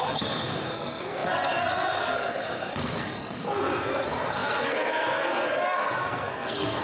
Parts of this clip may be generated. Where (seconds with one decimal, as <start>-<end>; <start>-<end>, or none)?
0.0-6.8